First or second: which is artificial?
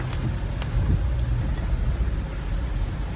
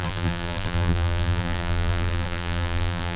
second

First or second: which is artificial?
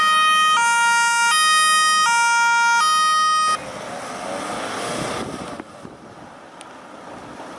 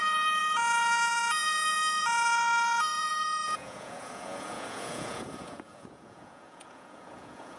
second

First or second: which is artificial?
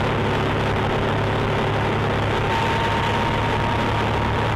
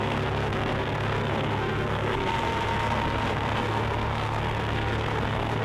second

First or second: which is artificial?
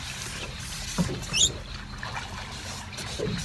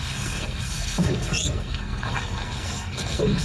second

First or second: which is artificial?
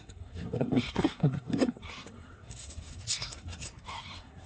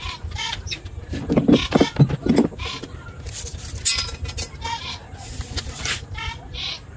first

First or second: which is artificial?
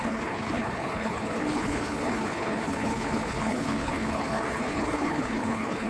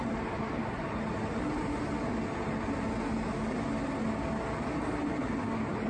first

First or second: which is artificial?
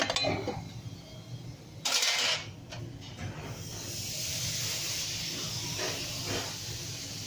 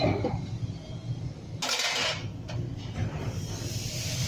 second